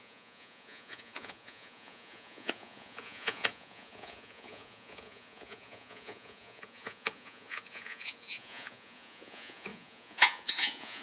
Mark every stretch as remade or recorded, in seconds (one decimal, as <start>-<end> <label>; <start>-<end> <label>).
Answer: 0.0-11.0 remade